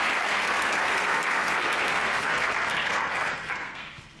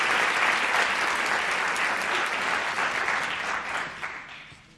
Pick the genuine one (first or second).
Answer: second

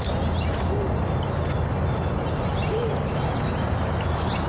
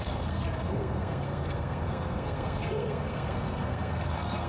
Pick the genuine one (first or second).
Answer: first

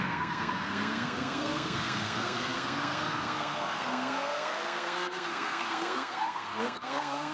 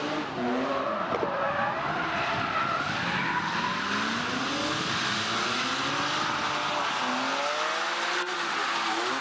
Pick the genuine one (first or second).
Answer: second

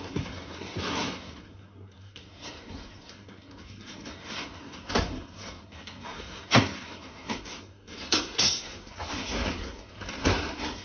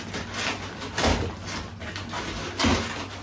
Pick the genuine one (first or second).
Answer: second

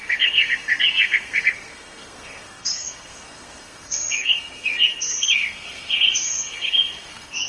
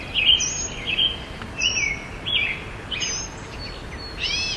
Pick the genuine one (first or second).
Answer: second